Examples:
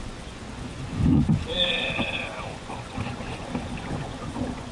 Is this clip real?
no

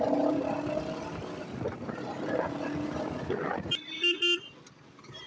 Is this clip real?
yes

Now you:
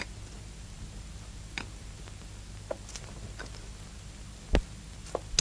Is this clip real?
yes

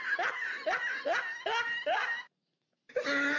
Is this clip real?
yes